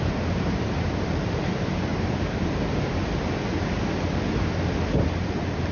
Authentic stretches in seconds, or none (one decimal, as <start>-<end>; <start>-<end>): 1.9-5.3